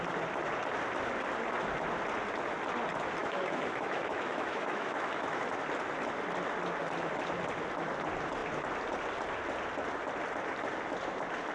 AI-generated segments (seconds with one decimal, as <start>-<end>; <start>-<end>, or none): 3.2-5.4